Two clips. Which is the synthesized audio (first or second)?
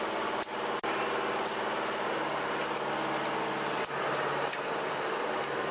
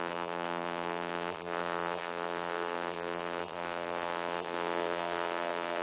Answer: second